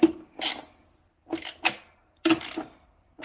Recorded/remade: recorded